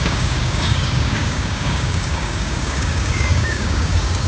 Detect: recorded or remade remade